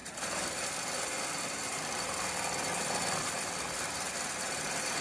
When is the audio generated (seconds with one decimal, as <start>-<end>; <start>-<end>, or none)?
0.0-3.0